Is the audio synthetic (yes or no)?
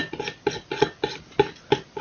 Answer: no